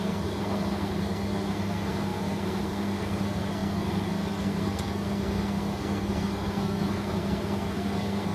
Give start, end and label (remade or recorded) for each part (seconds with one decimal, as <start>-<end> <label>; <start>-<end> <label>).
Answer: 0.0-8.3 remade